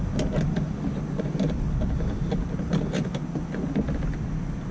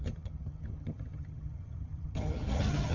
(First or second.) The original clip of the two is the first